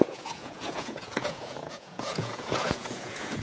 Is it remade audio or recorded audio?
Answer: remade